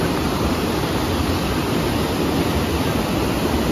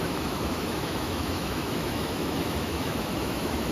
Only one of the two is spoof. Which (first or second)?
second